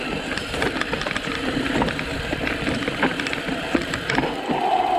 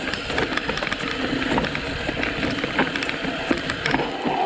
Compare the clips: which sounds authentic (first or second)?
second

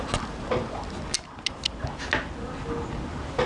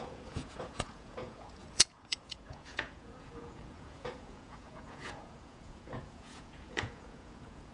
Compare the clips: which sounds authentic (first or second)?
first